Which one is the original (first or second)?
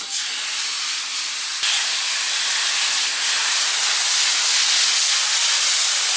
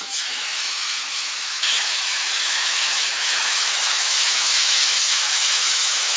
first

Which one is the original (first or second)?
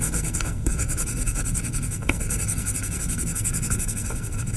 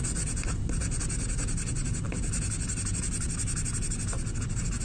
second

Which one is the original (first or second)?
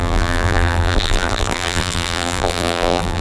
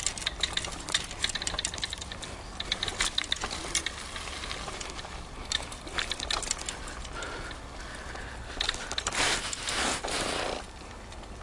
second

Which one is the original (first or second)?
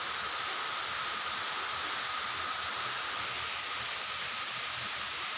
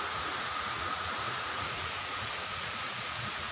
first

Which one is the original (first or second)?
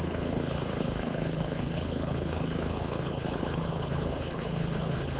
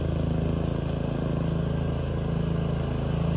second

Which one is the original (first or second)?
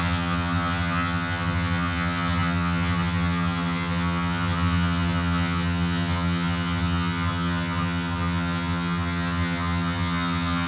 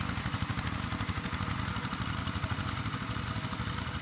second